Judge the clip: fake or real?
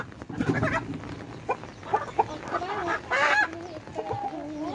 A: real